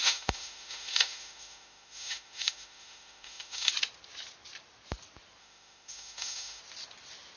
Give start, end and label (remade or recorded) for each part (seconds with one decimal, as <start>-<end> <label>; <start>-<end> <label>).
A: 0.0-3.7 remade; 3.7-5.4 recorded; 5.4-6.6 remade; 6.6-7.4 recorded